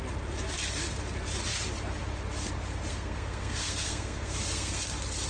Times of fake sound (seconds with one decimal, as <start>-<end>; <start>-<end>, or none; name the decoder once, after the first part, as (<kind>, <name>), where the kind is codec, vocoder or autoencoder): 2.9-4.8 (codec, SNAC)

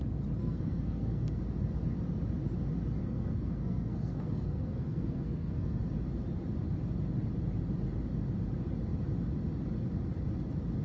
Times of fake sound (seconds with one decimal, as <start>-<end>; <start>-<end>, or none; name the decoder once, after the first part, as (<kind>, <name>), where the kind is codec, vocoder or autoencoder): 0.4-1.4 (codec, SNAC); 3.0-5.8